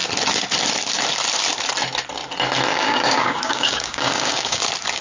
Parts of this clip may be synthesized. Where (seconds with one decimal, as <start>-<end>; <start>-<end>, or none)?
2.7-4.6